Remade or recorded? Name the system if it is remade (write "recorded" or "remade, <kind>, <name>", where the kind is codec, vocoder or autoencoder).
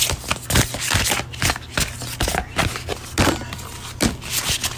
recorded